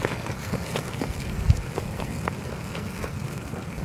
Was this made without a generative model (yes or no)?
no